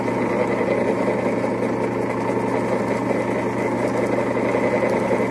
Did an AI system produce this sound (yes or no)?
no